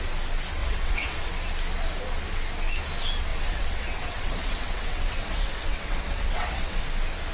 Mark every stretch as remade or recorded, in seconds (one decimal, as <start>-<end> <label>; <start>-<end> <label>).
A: 0.0-0.6 recorded; 0.6-1.3 remade; 1.3-3.3 recorded; 3.3-6.8 remade; 6.8-7.3 recorded